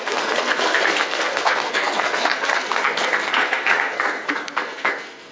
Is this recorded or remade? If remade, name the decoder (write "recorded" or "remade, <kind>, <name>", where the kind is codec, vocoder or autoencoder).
remade, codec, SNAC